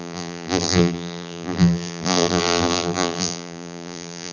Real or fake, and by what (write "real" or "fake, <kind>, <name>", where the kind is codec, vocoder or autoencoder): fake, vocoder, BigVGAN v2